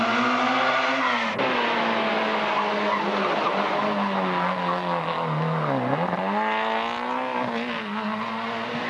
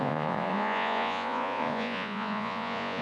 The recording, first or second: first